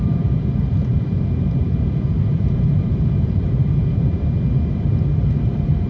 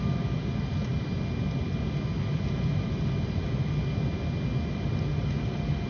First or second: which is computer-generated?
first